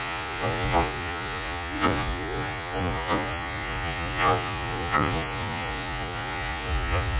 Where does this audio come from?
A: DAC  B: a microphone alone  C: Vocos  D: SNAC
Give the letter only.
C